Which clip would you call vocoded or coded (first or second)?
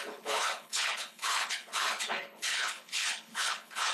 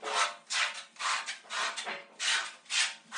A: first